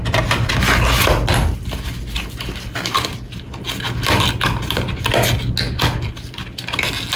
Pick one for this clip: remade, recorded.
recorded